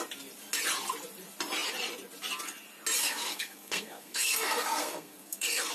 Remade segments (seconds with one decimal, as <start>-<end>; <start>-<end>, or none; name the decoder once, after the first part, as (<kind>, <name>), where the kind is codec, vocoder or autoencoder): 3.0-5.7 (codec, SNAC)